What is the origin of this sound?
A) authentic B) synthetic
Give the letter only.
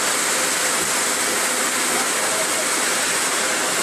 A